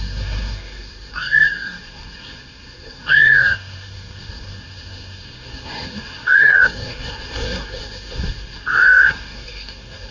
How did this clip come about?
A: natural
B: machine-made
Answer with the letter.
B